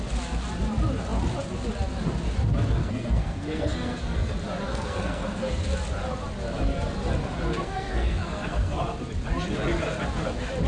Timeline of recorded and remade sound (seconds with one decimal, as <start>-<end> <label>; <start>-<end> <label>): 0.0-2.8 recorded; 2.8-4.3 remade; 4.3-4.7 recorded; 4.7-5.5 remade; 5.5-7.6 recorded; 7.6-8.8 remade; 8.8-10.7 recorded